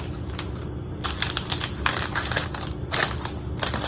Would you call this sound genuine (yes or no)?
yes